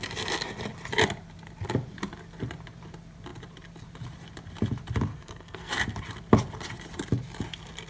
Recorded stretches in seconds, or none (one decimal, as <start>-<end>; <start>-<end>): 0.0-5.1; 5.7-7.9